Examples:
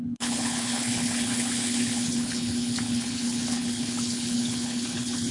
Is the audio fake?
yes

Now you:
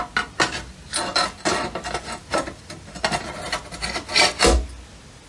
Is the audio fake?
no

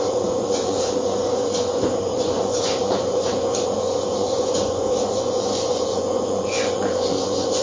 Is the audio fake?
yes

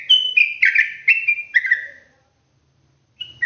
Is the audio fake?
no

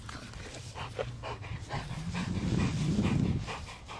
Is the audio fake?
yes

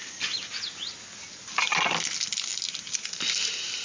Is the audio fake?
no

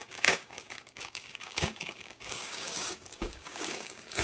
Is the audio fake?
yes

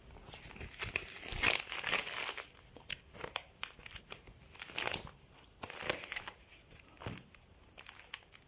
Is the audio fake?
no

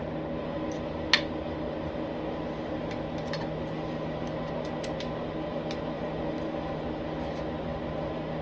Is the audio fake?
no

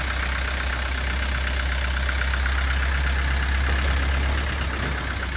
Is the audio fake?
no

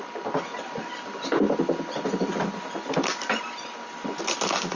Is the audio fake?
no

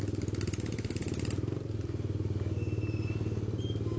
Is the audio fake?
no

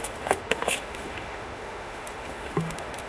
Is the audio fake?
yes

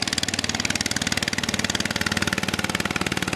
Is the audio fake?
no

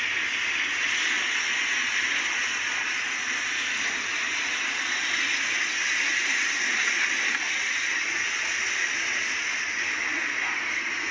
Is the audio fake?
no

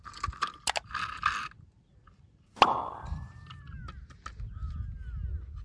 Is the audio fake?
no